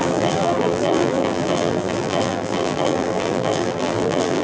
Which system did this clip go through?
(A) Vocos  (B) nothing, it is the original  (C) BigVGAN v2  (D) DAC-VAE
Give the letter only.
C